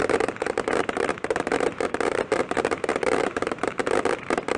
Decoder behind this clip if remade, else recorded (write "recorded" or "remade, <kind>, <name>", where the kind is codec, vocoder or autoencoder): remade, vocoder, BigVGAN v2